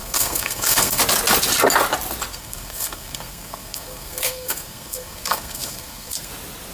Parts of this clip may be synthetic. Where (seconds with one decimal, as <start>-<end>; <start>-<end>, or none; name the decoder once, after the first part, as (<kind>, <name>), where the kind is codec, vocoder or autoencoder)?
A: 0.0-1.0 (codec, SNAC); 2.3-6.3